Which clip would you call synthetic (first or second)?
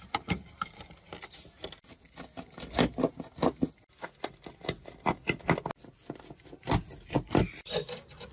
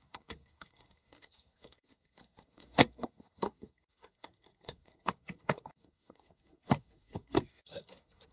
second